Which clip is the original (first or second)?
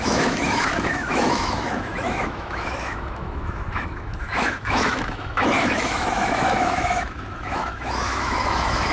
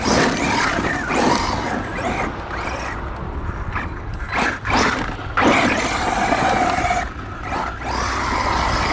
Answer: second